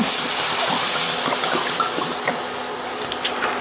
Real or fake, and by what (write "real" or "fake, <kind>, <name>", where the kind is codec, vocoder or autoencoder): real